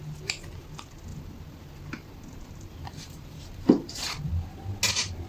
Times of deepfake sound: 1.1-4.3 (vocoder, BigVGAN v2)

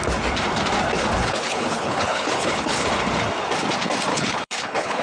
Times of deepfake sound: 1.2-2.9 (codec, HILCodec); 4.1-5.0

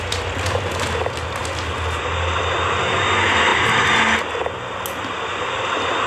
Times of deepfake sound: none